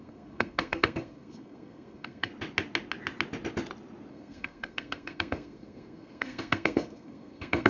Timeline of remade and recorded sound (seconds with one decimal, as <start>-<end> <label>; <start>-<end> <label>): 0.0-2.3 remade; 2.3-4.1 recorded; 4.1-7.7 remade